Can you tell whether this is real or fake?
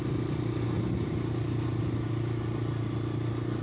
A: real